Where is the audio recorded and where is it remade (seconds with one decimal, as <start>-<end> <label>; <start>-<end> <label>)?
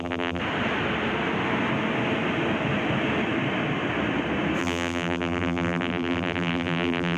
0.0-0.4 remade; 0.4-4.6 recorded; 4.6-7.2 remade